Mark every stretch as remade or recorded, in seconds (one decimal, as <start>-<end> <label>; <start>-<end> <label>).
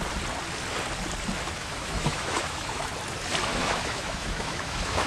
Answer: 0.0-1.6 recorded; 1.6-2.9 remade; 2.9-3.5 recorded; 3.5-5.1 remade